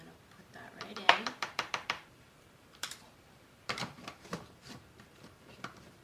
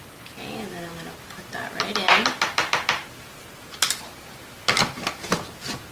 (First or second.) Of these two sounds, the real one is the second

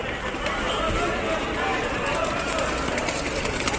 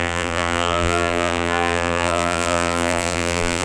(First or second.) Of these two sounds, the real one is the first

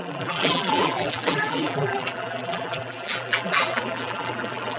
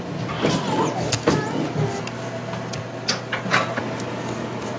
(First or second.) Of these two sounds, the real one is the second